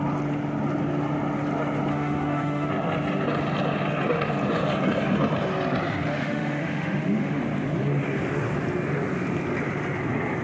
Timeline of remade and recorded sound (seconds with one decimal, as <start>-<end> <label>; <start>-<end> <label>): 0.0-1.9 recorded; 1.9-2.7 remade; 2.7-6.1 recorded; 6.1-7.4 remade; 7.4-10.4 recorded